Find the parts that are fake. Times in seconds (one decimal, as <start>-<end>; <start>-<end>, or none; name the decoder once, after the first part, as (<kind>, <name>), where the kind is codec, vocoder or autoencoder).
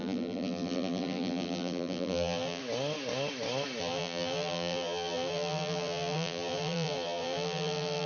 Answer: 0.0-2.6 (vocoder, BigVGAN v2); 3.8-8.1